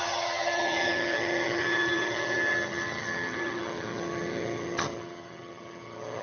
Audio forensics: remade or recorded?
remade